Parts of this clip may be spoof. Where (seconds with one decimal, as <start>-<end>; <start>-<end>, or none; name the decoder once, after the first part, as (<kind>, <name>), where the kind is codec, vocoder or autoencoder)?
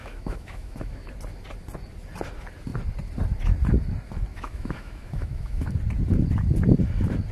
0.0-1.1 (autoencoder, DAC-VAE); 4.3-5.7